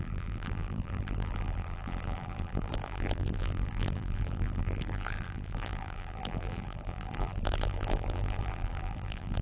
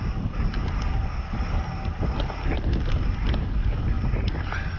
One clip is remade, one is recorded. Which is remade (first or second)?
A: first